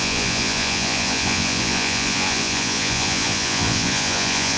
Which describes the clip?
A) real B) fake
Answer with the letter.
B